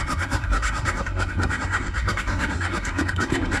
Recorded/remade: remade